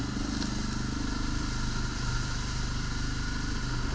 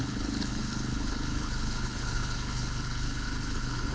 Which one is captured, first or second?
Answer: first